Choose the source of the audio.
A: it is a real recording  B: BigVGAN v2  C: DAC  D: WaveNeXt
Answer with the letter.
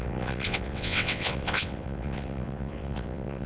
D